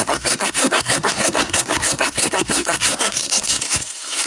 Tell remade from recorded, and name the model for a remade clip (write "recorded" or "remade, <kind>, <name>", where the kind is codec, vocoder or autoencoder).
remade, codec, SNAC